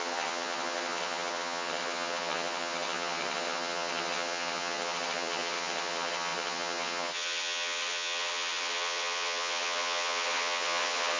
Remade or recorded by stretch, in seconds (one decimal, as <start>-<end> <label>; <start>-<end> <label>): 0.0-11.2 remade